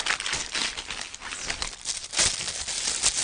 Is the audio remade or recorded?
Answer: recorded